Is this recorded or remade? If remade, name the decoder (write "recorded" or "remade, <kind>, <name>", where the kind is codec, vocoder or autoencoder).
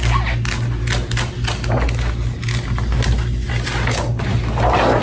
recorded